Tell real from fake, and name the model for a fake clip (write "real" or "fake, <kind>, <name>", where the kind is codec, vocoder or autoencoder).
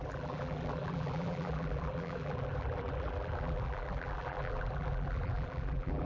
fake, vocoder, BigVGAN v2